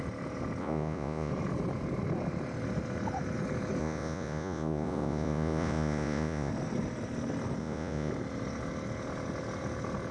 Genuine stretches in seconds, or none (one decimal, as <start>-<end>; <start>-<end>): 0.0-0.6; 1.3-3.8; 6.5-7.6; 8.1-10.1